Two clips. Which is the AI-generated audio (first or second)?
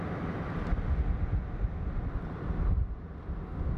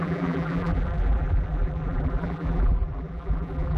second